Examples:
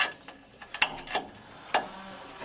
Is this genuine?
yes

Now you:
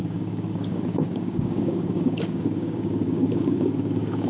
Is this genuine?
no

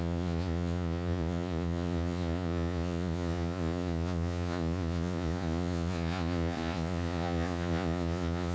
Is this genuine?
no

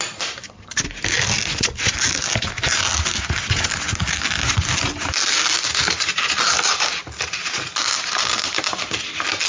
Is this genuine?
yes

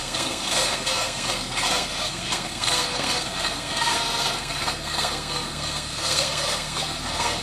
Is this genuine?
no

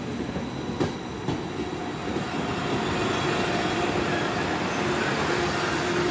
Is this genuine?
yes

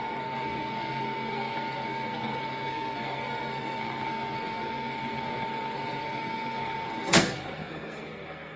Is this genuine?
no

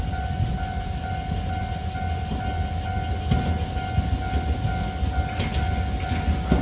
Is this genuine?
yes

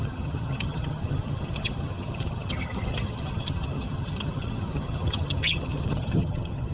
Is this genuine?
no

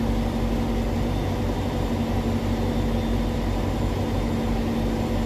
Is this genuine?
yes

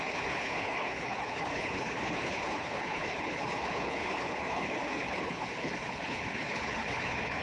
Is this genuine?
no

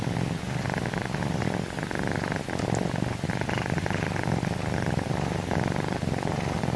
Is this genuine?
yes